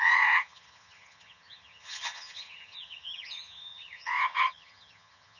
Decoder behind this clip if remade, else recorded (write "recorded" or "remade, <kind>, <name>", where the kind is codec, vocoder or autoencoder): remade, vocoder, HiFi-GAN